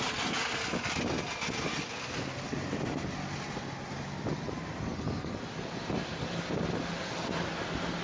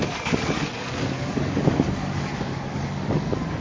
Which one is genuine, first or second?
first